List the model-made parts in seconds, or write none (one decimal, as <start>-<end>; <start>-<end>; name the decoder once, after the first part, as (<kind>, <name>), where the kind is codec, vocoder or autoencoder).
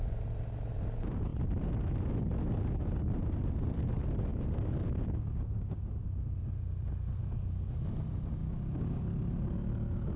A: 4.3-5.9 (codec, DAC); 8.4-9.0